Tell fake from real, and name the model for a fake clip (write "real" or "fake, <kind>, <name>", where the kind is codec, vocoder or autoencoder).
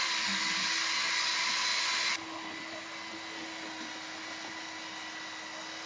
real